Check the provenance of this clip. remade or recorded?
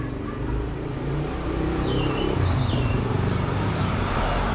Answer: remade